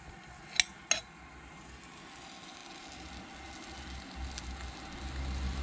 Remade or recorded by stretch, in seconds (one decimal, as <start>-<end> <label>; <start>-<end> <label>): 0.0-5.6 recorded